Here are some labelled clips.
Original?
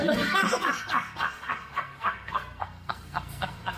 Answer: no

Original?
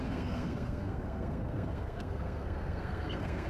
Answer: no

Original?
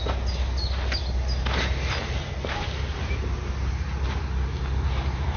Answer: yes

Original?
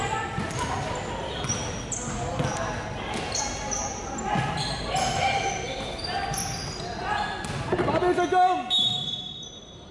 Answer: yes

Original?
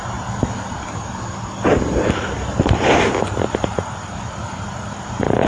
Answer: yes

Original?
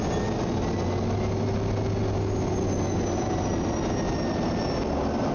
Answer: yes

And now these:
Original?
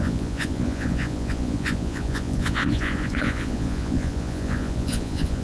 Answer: no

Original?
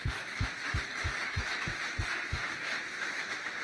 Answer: no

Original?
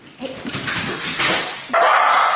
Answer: yes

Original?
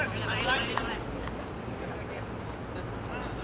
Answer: yes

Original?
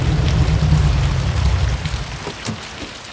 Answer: yes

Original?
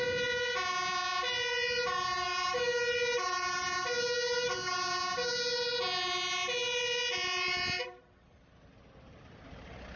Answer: yes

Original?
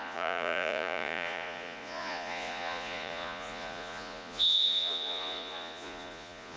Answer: no